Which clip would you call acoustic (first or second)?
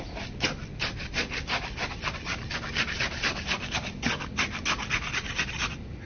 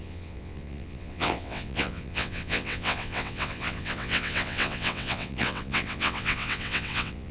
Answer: first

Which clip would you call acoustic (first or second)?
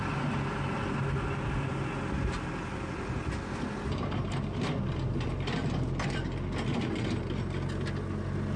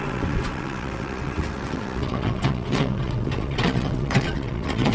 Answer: first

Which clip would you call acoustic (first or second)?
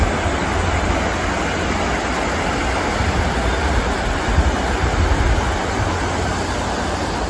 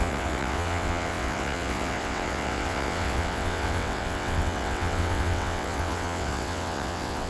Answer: first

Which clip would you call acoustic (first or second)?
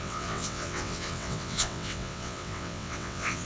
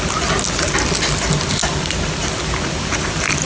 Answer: second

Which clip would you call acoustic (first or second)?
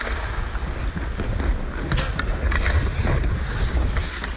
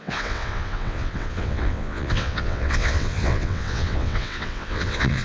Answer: first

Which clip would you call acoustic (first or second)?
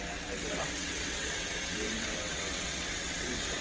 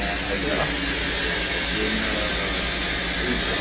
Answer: second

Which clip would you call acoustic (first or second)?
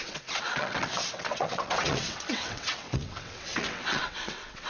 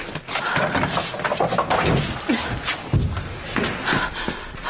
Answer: second